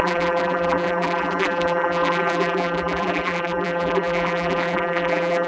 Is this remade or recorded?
remade